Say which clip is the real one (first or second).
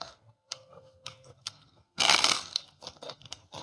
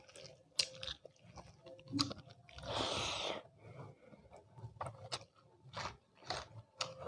second